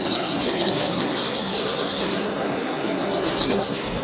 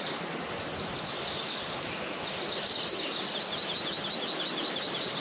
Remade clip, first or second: first